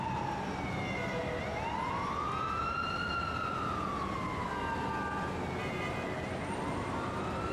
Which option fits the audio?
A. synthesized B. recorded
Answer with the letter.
B